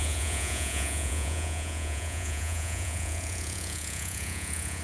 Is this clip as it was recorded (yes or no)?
no